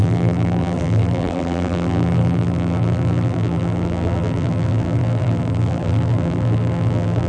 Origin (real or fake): fake